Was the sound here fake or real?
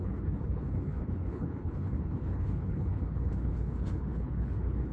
fake